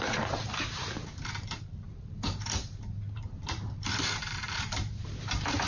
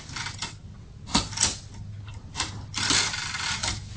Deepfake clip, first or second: first